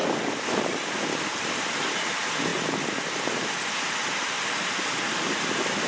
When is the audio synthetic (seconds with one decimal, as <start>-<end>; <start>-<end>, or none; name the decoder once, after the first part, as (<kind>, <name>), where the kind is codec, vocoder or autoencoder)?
0.0-2.5 (vocoder, BigVGAN v2); 3.3-5.9